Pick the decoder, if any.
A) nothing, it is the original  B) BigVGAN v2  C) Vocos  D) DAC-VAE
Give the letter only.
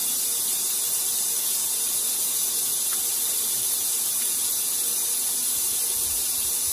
B